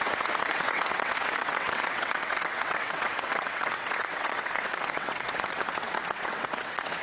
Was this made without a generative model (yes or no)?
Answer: no